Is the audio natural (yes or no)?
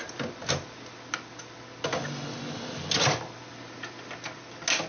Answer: yes